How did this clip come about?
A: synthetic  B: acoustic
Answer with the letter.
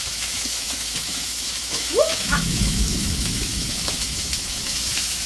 A